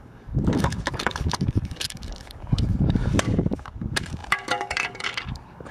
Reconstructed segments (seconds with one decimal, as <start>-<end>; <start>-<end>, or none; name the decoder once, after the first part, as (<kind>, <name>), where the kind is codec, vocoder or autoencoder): 0.0-5.7 (codec, DAC)